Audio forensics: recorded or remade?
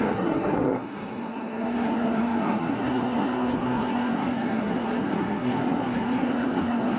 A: remade